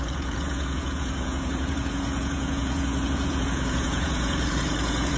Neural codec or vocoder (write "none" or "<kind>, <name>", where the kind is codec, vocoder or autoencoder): vocoder, Vocos